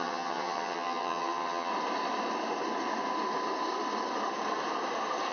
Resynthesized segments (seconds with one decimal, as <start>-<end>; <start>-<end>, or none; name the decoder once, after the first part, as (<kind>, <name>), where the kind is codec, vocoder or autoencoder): 0.0-1.7 (vocoder, HiFi-GAN)

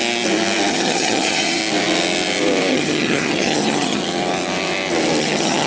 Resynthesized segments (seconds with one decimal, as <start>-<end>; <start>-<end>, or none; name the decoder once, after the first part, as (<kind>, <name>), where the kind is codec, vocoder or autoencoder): 0.7-1.6 (vocoder, HiFi-GAN); 2.7-4.0; 5.2-5.7

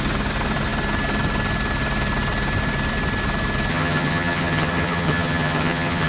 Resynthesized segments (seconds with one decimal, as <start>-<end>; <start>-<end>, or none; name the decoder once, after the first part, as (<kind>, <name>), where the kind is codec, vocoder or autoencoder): 3.7-6.1 (vocoder, HiFi-GAN)